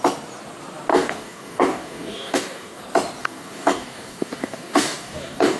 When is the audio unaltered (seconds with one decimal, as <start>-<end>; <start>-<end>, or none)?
0.0-0.9; 2.8-3.2